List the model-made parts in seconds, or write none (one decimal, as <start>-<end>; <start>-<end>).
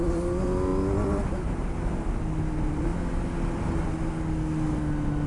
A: none